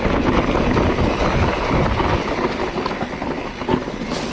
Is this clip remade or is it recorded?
recorded